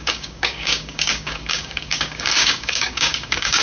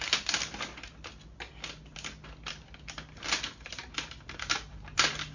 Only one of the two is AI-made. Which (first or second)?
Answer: first